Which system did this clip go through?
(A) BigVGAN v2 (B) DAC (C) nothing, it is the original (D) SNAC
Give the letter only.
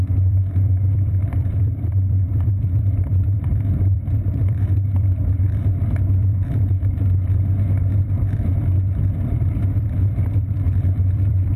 A